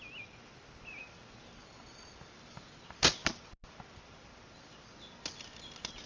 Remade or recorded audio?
recorded